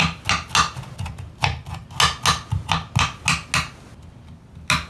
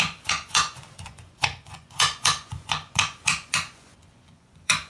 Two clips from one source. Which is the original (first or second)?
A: first